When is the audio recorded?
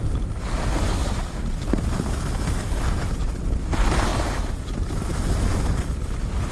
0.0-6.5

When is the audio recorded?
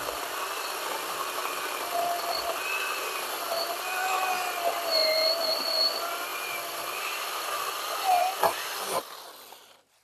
0.0-10.0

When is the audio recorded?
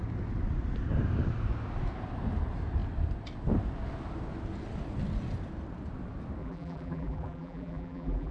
0.0-6.4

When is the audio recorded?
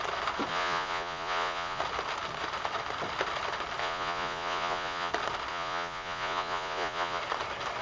0.0-0.5; 1.8-3.8; 5.1-5.5; 7.2-7.8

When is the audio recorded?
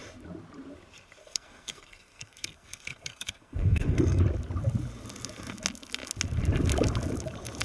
0.0-1.2; 4.2-7.6